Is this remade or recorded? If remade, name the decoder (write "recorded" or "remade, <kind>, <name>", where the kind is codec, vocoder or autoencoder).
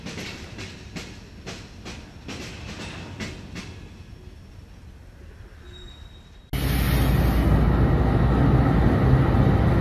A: recorded